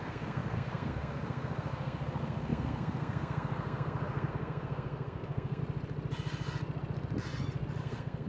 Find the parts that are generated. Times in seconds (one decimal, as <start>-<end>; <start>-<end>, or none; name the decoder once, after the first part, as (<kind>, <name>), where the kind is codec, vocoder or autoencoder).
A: 0.0-5.6 (codec, SNAC); 7.8-8.3